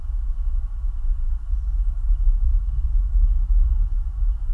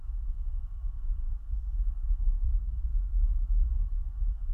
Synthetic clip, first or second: second